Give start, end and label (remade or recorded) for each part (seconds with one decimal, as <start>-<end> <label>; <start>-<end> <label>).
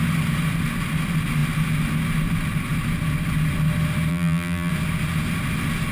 0.0-4.1 recorded; 4.1-4.7 remade; 4.7-5.9 recorded